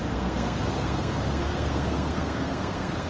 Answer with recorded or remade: remade